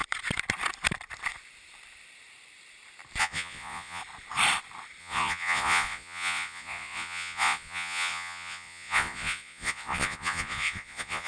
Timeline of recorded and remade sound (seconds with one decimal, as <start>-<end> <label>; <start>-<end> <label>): 0.0-3.2 recorded; 3.2-4.0 remade; 4.0-5.0 recorded; 5.0-11.3 remade